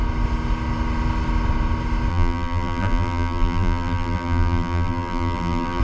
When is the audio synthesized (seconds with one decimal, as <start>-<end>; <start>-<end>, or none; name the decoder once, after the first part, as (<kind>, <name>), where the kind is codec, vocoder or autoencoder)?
2.1-5.8 (vocoder, BigVGAN v2)